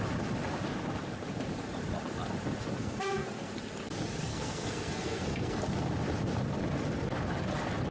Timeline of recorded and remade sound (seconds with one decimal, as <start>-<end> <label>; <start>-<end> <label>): 0.0-2.8 recorded; 2.8-3.5 remade; 3.5-4.3 recorded; 4.3-5.6 remade; 5.6-7.9 recorded